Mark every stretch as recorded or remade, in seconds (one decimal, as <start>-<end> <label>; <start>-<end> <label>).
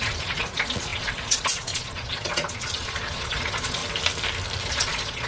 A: 0.0-3.8 remade; 3.8-4.7 recorded; 4.7-5.3 remade